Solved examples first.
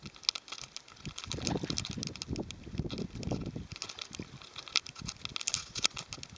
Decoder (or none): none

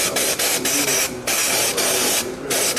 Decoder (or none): none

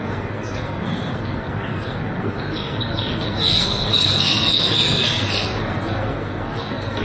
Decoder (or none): codec, SNAC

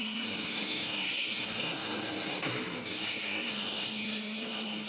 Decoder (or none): codec, SNAC